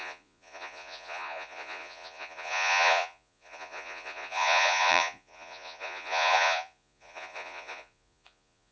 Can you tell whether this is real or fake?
fake